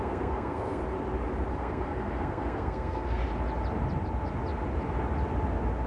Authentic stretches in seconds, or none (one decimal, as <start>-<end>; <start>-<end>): 0.8-1.5; 3.2-5.9